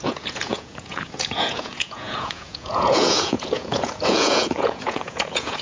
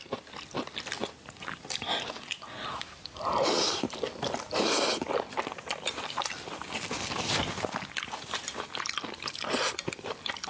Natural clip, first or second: second